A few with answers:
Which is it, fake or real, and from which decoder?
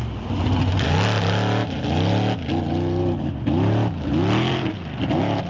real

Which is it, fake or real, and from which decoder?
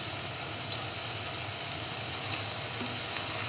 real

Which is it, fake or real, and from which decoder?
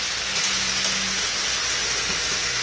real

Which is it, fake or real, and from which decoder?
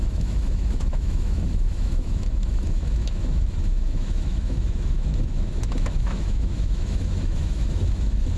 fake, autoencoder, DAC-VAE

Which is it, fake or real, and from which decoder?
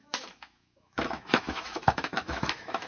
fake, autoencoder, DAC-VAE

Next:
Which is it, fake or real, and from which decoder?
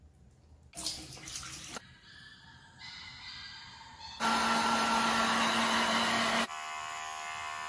real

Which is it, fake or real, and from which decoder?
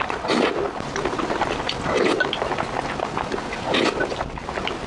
real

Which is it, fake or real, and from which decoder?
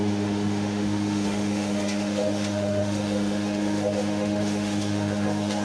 fake, autoencoder, DAC-VAE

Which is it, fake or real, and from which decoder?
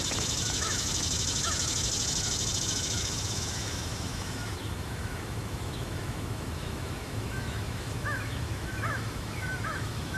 fake, autoencoder, DAC-VAE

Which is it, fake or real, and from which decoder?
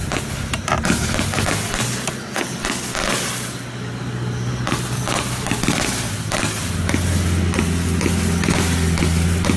real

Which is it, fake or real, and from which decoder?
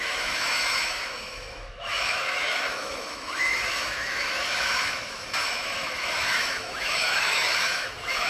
fake, autoencoder, DAC-VAE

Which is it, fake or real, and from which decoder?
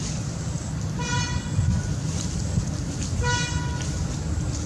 real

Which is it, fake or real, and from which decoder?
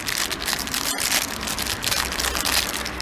real